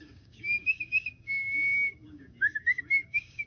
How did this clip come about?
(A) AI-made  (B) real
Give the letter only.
A